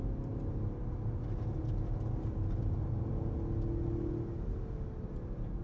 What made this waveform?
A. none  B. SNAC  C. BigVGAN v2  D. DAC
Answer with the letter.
A